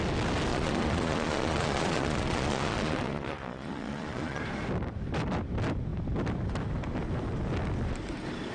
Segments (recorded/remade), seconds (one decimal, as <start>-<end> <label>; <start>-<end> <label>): 0.0-0.5 recorded; 0.5-4.4 remade; 4.4-8.5 recorded